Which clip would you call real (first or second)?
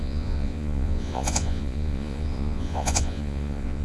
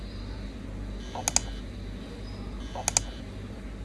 second